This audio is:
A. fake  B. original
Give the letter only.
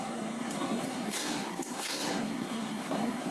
A